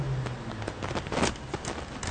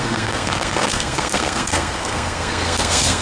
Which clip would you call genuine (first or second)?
first